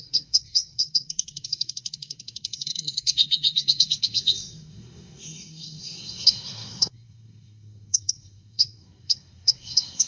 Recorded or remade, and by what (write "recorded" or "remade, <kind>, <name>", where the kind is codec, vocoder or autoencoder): remade, codec, SNAC